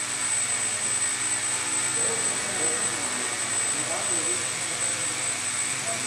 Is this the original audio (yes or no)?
yes